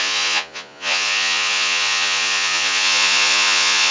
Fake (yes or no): yes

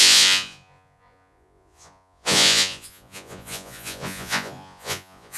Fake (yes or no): yes